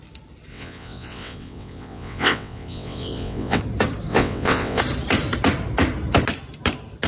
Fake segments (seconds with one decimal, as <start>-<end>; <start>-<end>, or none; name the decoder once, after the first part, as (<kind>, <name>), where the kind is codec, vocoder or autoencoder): 0.5-3.6 (vocoder, WaveNeXt); 4.1-4.8